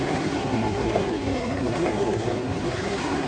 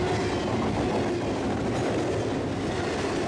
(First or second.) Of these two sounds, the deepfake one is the first